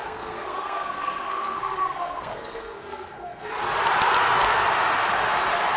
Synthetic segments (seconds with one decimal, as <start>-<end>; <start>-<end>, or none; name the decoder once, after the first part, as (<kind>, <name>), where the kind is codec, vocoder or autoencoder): 0.0-3.5 (codec, SNAC)